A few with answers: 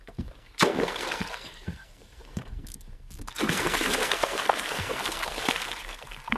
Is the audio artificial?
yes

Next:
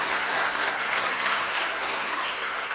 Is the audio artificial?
yes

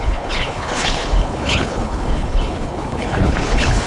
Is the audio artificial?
yes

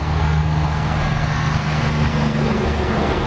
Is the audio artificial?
yes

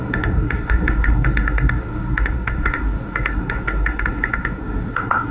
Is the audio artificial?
yes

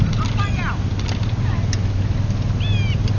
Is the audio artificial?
no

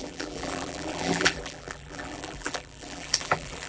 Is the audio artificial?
yes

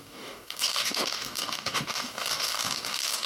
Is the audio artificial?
yes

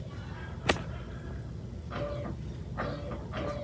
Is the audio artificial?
no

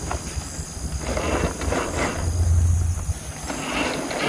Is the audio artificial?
no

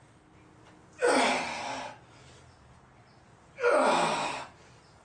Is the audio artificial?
no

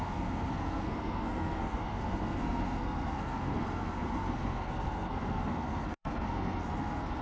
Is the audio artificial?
yes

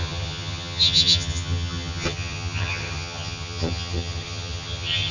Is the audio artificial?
yes